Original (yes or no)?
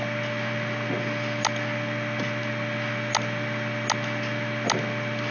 yes